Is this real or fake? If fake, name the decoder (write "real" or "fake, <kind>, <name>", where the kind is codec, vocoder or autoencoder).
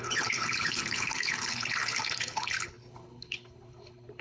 fake, codec, HILCodec